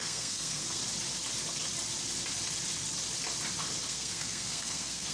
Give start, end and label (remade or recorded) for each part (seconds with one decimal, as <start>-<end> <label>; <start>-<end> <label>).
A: 0.0-0.8 remade; 0.8-3.9 recorded; 3.9-5.1 remade